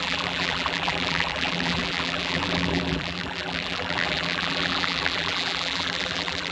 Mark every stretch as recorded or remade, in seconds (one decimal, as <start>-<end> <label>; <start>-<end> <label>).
0.0-6.5 remade